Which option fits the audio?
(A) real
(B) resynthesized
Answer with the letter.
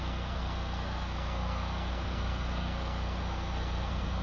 B